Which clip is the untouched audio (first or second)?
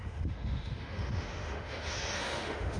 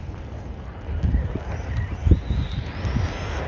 second